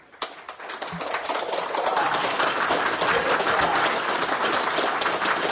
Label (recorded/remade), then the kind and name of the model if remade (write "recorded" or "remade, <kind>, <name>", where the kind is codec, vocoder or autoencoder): recorded